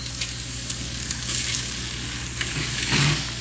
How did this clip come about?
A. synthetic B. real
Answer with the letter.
A